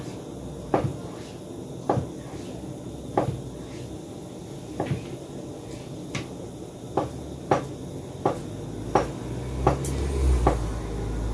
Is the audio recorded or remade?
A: recorded